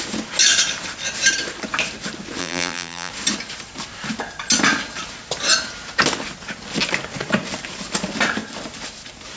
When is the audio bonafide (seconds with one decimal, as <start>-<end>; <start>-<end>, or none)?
0.0-2.4; 3.1-9.4